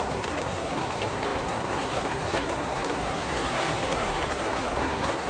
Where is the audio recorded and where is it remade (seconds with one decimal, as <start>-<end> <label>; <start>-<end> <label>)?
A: 0.0-5.3 remade